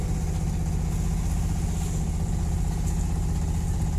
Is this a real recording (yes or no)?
yes